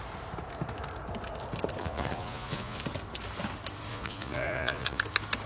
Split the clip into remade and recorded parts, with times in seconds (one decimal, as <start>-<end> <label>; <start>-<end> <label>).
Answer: 0.0-1.8 recorded; 1.8-2.8 remade; 2.8-3.9 recorded; 3.9-5.0 remade; 5.0-5.5 recorded